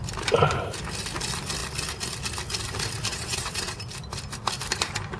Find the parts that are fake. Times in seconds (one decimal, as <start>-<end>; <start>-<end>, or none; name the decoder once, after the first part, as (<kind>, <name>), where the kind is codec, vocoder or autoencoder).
3.1-3.8 (vocoder, WaveNeXt)